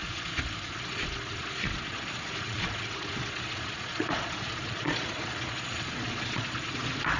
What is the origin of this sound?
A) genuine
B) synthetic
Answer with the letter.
B